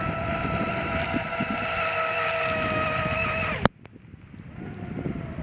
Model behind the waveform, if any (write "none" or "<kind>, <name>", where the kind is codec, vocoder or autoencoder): none